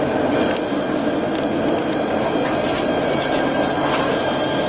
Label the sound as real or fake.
real